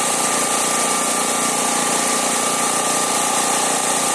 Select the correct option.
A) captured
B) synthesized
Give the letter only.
A